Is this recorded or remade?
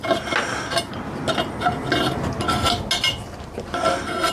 recorded